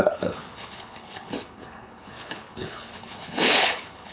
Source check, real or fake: fake